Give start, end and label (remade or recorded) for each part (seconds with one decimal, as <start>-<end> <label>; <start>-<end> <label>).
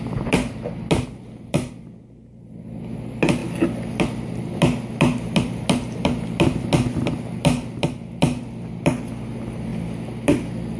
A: 0.0-10.8 recorded